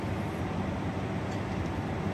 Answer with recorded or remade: recorded